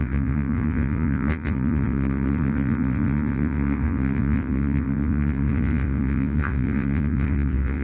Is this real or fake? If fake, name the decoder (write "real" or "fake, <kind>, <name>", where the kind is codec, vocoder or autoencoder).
fake, vocoder, Vocos